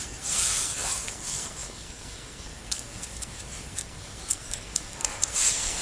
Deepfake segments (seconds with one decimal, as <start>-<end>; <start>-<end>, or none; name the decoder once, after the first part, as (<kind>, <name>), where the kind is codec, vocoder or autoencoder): 0.0-5.8 (codec, SNAC)